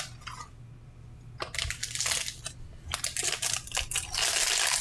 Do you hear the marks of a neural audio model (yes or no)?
no